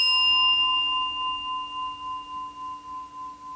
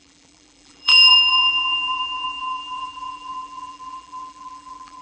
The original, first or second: first